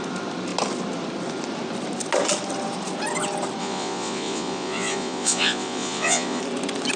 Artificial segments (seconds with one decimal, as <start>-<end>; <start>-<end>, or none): 3.6-6.4